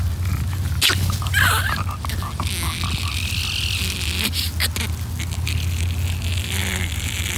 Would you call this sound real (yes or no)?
yes